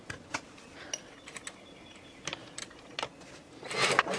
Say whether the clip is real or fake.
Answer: real